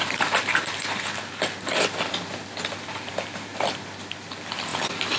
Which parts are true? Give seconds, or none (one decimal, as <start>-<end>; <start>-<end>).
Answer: 0.0-5.2